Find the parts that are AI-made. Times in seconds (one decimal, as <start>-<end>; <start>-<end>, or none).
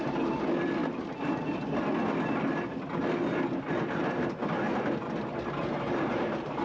none